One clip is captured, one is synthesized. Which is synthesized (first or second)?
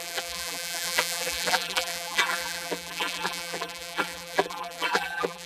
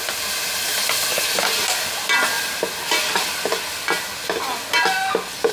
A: first